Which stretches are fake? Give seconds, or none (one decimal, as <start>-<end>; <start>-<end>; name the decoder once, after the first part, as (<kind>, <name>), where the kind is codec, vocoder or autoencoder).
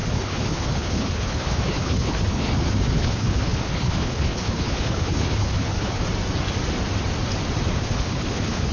0.0-6.0 (codec, HILCodec); 7.8-8.7